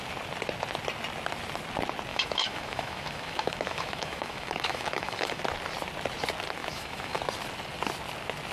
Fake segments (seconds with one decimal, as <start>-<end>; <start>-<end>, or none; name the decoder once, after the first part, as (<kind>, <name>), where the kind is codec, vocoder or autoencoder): 2.1-5.4 (autoencoder, DAC-VAE); 6.6-7.2